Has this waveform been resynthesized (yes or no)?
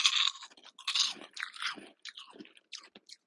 no